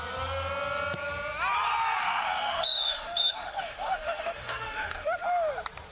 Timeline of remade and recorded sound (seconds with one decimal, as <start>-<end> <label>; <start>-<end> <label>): 0.0-2.0 recorded; 2.0-5.5 remade; 5.5-5.9 recorded